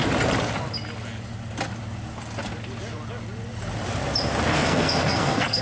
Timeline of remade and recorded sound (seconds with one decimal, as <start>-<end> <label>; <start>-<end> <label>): 0.0-4.5 recorded; 4.5-5.6 remade